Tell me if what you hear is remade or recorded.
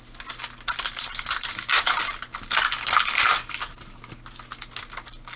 recorded